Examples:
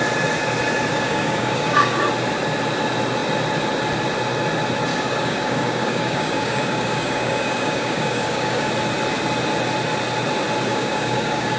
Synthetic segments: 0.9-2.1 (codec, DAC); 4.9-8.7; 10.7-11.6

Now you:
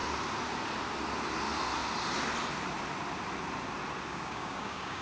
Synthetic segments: 4.1-5.0 (codec, DAC)

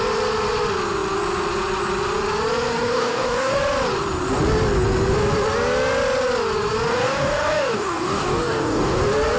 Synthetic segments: 2.7-3.6 (codec, DAC); 6.9-9.0

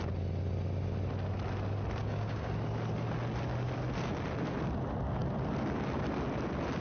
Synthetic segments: 2.0-2.5 (codec, DAC)

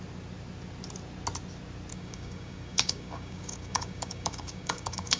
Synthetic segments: 1.9-5.2 (codec, DAC)